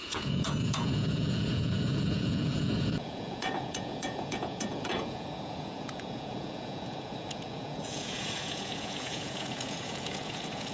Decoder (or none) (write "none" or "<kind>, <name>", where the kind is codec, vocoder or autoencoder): vocoder, Vocos